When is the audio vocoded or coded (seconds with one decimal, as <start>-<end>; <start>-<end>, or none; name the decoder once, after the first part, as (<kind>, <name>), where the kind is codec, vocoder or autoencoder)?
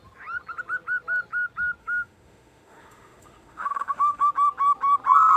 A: 1.8-4.3 (autoencoder, DAC-VAE)